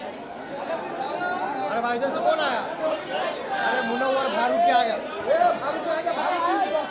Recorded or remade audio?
recorded